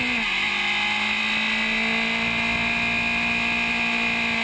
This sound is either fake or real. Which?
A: real